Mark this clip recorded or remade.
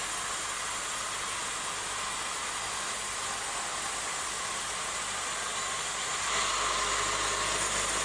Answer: recorded